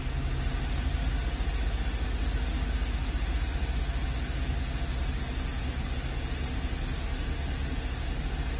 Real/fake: real